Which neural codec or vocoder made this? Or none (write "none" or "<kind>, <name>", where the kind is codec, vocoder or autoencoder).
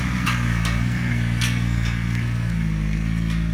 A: codec, SNAC